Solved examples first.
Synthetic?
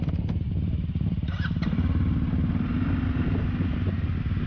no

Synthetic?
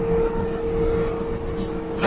no